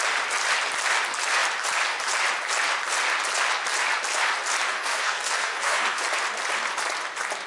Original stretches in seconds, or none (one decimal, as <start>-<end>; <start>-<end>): 0.0-4.7; 6.0-7.5